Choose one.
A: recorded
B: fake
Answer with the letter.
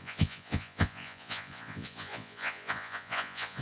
B